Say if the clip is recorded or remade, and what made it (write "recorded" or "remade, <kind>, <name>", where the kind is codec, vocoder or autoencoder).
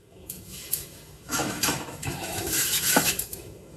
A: remade, autoencoder, DAC-VAE